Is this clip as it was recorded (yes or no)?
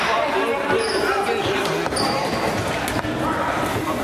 yes